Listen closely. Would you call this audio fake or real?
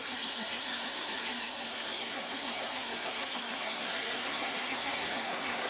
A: fake